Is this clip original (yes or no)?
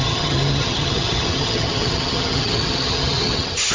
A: no